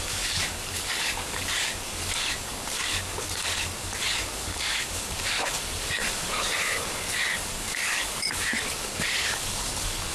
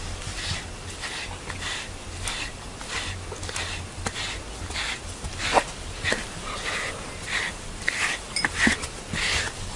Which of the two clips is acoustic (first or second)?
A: second